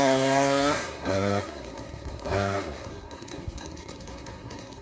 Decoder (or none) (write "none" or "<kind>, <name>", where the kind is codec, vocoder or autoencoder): codec, SNAC